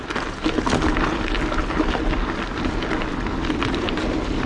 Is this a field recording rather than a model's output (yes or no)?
yes